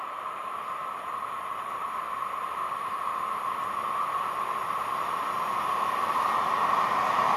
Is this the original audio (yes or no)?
no